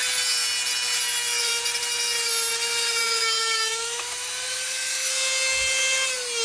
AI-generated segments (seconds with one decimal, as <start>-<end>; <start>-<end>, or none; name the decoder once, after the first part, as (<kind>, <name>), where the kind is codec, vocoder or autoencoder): 3.0-5.1 (autoencoder, DAC-VAE)